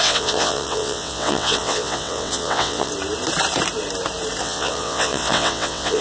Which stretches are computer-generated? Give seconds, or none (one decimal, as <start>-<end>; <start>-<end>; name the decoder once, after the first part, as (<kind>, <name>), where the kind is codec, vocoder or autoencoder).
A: 0.0-2.9 (vocoder, WaveNeXt); 4.4-6.0